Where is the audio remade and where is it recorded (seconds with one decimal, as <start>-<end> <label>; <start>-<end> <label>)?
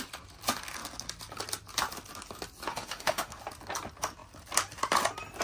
0.0-2.7 recorded; 2.7-3.4 remade; 3.4-5.4 recorded